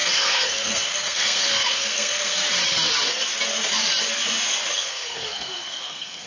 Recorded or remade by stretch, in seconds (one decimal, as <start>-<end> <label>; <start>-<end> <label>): 0.0-2.4 remade; 2.4-4.7 recorded; 4.7-6.3 remade